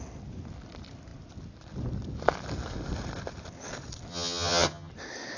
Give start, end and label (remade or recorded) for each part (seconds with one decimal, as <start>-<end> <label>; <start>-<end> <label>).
0.0-4.1 recorded; 4.1-4.9 remade; 4.9-5.4 recorded